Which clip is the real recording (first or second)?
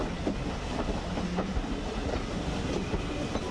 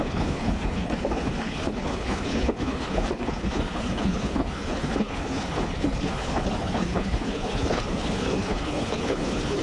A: first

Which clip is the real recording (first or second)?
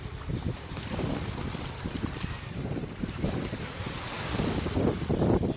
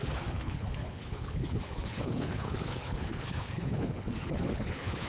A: first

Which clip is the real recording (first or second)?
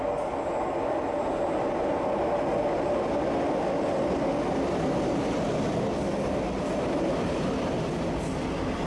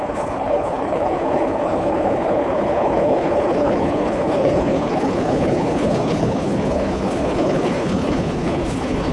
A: first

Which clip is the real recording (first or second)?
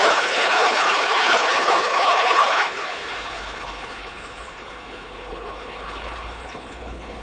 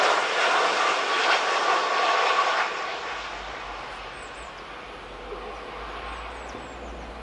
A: second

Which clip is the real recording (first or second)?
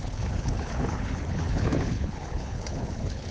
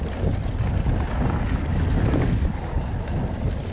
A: second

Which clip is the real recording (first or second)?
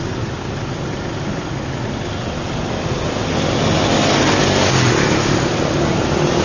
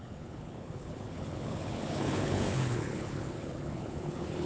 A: first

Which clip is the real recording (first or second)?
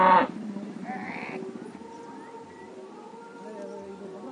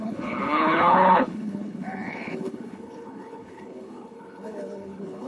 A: first